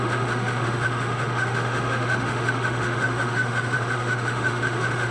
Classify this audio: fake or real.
fake